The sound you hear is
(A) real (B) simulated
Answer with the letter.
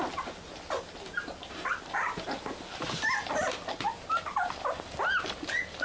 A